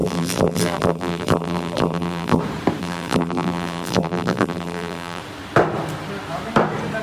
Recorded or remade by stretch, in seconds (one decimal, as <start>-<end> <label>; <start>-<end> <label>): 0.0-2.4 remade; 2.4-2.8 recorded; 2.8-5.2 remade; 5.2-7.0 recorded